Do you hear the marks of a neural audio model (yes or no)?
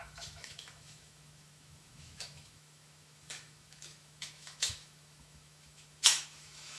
yes